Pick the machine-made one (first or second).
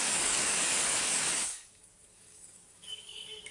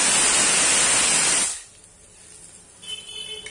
first